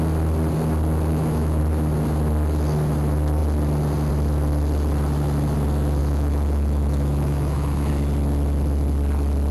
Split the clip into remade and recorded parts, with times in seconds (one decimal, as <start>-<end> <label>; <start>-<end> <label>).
0.0-1.1 recorded; 1.1-1.6 remade; 1.6-6.0 recorded; 6.0-7.9 remade; 7.9-9.5 recorded